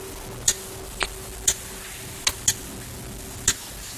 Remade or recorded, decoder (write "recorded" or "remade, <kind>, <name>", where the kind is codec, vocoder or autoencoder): recorded